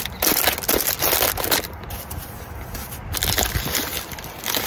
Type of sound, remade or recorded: recorded